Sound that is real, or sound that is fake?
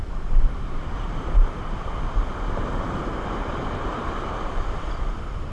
fake